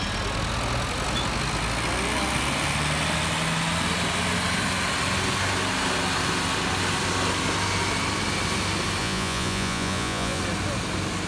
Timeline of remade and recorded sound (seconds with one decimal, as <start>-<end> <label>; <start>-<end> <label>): 0.0-9.0 recorded; 9.0-10.4 remade; 10.4-11.3 recorded